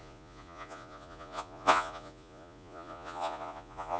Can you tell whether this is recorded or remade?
remade